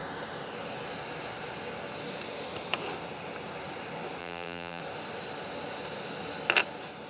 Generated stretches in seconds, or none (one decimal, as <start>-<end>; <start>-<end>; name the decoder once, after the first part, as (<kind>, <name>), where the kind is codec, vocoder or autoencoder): 4.2-4.8 (vocoder, BigVGAN v2)